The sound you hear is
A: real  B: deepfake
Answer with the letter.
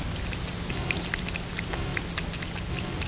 A